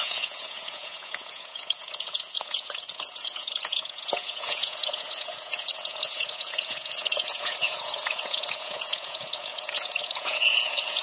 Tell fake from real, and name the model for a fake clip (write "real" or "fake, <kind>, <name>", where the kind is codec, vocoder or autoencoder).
fake, vocoder, Vocos